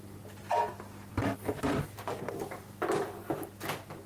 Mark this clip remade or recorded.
recorded